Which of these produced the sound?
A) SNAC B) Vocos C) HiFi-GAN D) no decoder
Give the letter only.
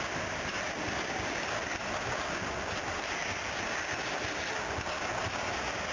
D